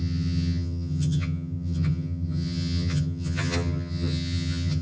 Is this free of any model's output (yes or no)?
no